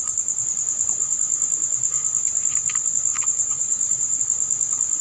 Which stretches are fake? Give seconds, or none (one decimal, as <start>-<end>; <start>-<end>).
3.1-4.2